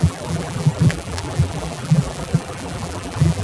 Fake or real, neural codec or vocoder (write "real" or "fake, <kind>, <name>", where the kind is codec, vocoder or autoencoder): fake, vocoder, BigVGAN v2